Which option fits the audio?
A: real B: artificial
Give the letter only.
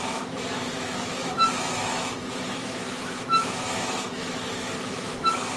B